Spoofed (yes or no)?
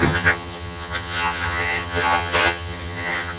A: yes